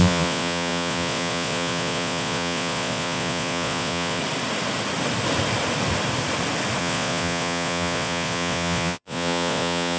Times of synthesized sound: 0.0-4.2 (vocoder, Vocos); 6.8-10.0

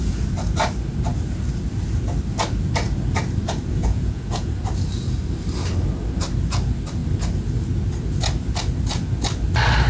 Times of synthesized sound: 3.8-4.5 (vocoder, Vocos)

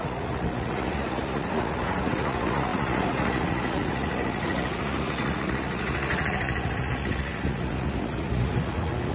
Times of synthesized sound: 0.0-9.1 (vocoder, Vocos)

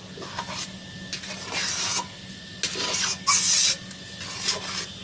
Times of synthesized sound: none

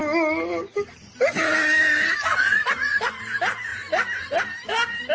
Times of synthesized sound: 2.3-3.0 (vocoder, Vocos)